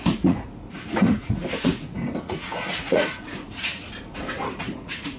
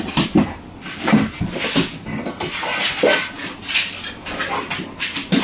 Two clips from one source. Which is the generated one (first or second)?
first